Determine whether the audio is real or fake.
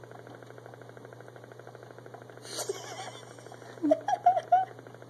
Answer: real